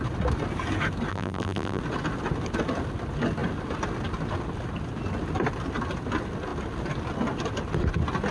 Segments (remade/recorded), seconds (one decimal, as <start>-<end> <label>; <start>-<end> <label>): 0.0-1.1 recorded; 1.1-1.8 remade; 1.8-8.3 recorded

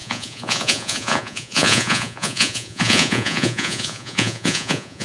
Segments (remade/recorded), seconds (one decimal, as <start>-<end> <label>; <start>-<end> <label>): 0.0-5.0 remade

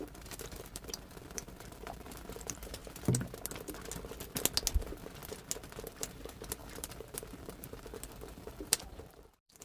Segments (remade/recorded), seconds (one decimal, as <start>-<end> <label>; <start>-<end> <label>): 0.0-2.8 remade; 2.8-4.8 recorded; 4.8-5.2 remade; 5.2-5.9 recorded; 5.9-9.6 remade